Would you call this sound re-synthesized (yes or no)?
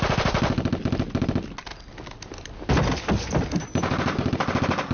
no